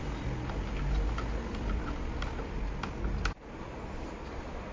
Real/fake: real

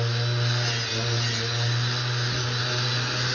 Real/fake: real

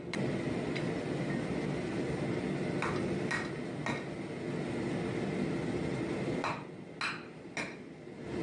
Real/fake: real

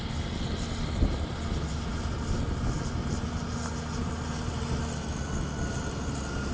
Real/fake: real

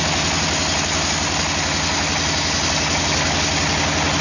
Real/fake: real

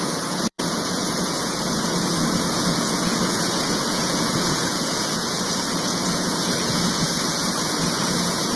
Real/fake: fake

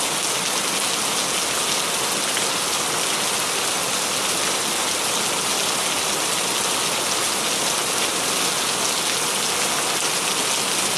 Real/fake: real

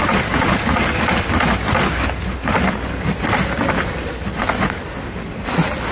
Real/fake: fake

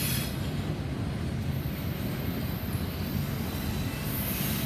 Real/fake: real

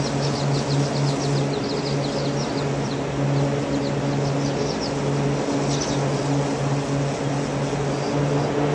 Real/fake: real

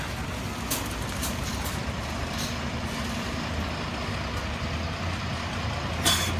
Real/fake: real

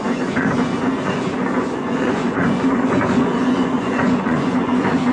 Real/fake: fake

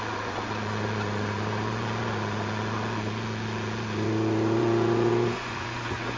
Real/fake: fake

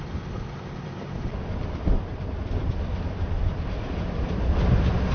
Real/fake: fake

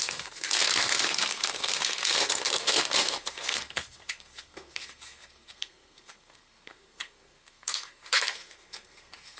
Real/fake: fake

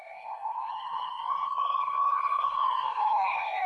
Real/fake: fake